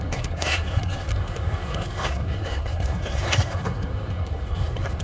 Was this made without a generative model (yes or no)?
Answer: no